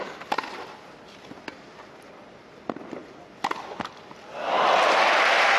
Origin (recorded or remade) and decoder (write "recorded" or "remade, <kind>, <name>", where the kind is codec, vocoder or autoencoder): recorded